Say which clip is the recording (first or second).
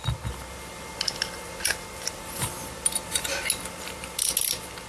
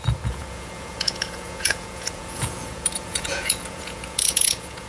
first